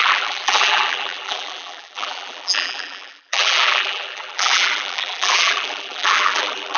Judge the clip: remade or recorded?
remade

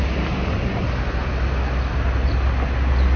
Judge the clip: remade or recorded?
recorded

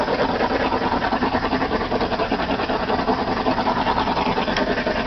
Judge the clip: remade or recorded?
recorded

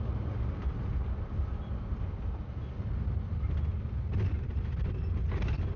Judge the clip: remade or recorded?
recorded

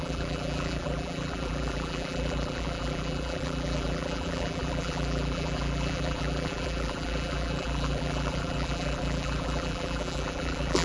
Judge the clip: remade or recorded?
remade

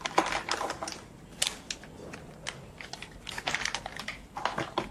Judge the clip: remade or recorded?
recorded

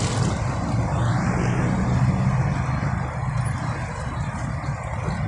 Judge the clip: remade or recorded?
recorded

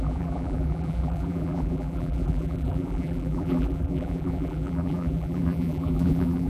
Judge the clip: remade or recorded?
remade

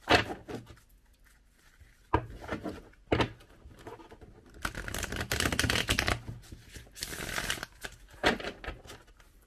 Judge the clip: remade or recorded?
recorded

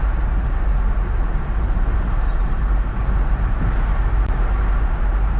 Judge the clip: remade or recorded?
remade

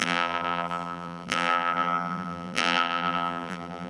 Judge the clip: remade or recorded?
remade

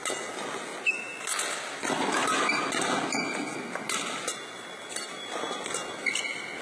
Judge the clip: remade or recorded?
recorded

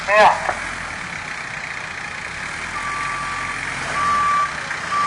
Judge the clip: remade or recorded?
recorded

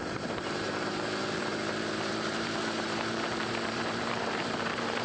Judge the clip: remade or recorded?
remade